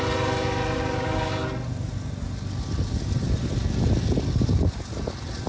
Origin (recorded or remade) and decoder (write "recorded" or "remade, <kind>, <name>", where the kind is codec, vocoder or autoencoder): recorded